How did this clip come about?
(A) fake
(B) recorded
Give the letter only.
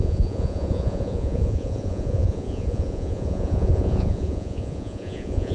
A